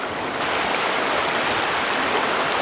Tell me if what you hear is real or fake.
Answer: real